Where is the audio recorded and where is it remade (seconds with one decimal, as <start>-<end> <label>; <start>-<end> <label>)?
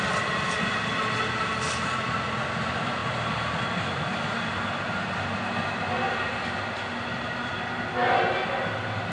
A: 0.0-9.1 recorded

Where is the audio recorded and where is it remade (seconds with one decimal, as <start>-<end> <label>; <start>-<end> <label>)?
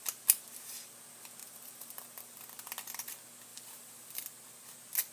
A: 0.0-1.4 recorded; 1.4-2.4 remade; 2.4-3.5 recorded; 3.5-4.2 remade; 4.2-5.1 recorded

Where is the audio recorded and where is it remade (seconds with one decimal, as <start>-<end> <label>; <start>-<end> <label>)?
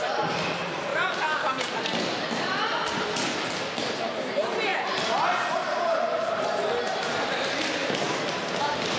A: 0.0-0.9 remade; 0.9-2.6 recorded; 2.6-3.3 remade; 3.3-3.8 recorded; 3.8-4.7 remade; 4.7-5.5 recorded; 5.5-9.0 remade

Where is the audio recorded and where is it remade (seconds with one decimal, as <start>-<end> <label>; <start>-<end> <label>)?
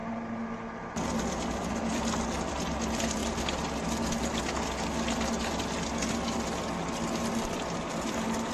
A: 0.0-1.3 recorded; 1.3-3.2 remade; 3.2-7.5 recorded; 7.5-8.5 remade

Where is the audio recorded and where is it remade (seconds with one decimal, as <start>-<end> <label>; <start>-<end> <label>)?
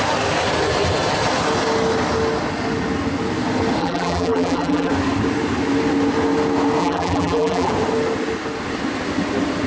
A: 0.0-3.8 recorded; 3.8-4.9 remade; 4.9-6.8 recorded; 6.8-7.7 remade; 7.7-9.7 recorded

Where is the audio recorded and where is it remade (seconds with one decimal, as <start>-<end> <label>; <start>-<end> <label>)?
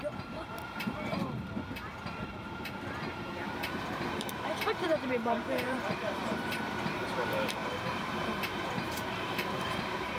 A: 0.0-10.2 remade